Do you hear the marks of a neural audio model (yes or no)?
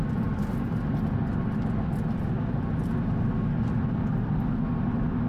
no